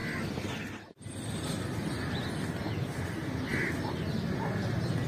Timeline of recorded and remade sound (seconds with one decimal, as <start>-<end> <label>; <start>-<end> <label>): 0.0-5.1 recorded